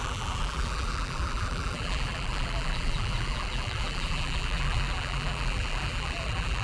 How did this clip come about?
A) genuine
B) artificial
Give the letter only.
B